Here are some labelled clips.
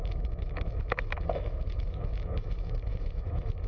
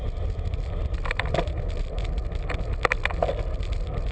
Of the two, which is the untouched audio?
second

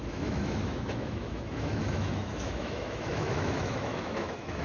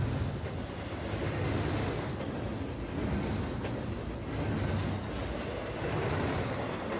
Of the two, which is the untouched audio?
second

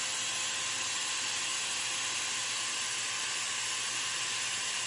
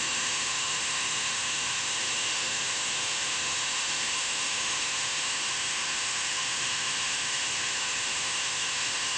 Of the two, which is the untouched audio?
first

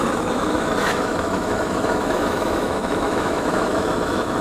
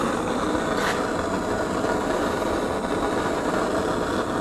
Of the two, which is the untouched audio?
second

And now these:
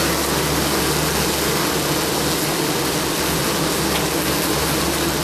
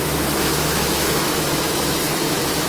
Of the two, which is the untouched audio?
first